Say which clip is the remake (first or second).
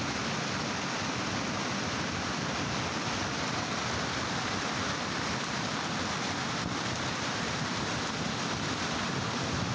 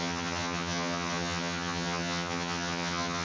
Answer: second